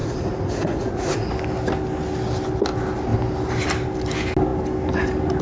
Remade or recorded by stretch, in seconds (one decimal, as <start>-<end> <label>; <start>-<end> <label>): 0.0-1.3 remade; 1.3-5.4 recorded